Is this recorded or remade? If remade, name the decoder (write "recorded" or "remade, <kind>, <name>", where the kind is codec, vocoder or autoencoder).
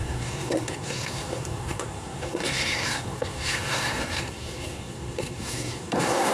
remade, codec, SNAC